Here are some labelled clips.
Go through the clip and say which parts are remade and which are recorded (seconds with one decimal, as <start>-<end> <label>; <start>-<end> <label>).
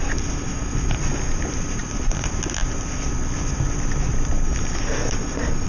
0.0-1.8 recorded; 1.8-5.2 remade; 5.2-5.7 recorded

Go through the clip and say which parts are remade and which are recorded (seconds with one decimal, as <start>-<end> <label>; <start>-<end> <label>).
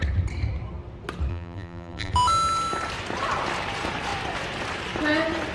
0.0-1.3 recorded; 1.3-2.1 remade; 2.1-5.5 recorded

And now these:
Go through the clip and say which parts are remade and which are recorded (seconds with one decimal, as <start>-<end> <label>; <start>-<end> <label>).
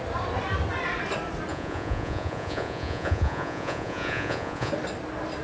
0.0-1.5 recorded; 1.5-4.7 remade; 4.7-5.4 recorded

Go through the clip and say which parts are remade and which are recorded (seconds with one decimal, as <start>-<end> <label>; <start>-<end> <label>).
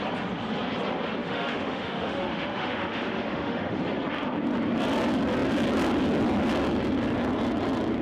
0.0-1.2 recorded; 1.2-3.8 remade; 3.8-8.0 recorded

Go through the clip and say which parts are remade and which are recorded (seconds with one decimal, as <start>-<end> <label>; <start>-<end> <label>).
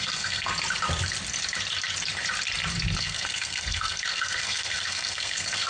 0.0-0.5 remade; 0.5-3.0 recorded; 3.0-5.7 remade